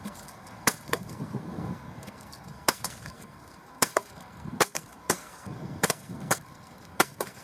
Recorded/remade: remade